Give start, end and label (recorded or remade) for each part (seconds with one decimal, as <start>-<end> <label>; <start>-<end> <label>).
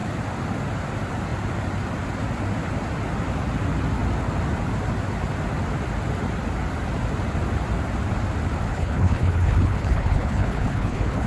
0.0-8.7 recorded; 8.7-11.3 remade